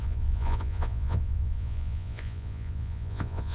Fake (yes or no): yes